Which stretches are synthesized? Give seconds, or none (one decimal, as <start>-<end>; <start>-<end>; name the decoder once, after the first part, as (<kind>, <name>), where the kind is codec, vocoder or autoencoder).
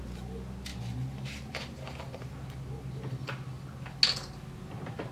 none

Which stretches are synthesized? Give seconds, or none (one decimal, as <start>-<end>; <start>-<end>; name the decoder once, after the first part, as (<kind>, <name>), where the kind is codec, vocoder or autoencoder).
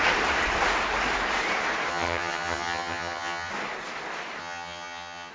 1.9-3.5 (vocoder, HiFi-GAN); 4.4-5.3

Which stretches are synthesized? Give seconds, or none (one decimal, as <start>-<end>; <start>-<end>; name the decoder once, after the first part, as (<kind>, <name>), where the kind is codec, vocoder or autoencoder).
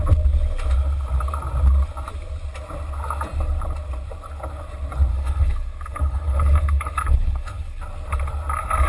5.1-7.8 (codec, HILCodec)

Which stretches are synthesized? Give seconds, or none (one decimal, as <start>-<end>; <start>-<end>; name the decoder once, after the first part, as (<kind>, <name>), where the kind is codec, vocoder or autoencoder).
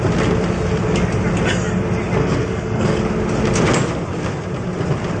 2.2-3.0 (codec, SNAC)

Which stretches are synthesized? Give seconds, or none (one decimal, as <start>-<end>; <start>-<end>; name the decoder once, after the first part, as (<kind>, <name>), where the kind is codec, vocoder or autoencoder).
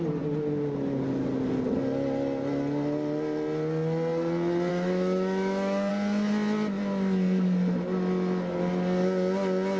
4.7-5.9 (autoencoder, DAC-VAE)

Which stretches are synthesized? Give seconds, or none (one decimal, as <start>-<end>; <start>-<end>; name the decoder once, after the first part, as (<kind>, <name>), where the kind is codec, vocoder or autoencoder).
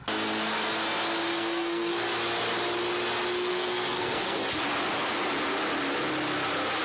1.3-1.9 (codec, SNAC); 3.5-4.4